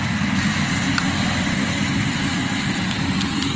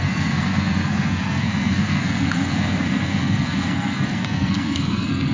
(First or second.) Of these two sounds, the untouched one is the first